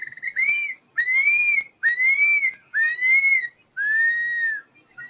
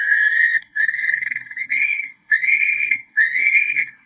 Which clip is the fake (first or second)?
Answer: second